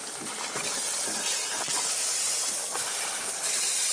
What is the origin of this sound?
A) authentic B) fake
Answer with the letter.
A